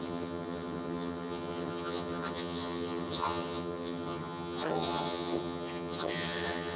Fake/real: fake